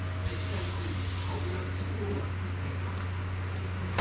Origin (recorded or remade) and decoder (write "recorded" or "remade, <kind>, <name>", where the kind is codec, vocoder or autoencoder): recorded